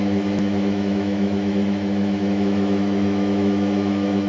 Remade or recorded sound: remade